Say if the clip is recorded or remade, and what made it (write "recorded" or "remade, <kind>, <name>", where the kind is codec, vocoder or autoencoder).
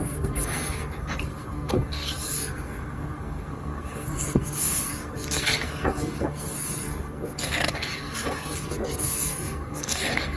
remade, codec, SNAC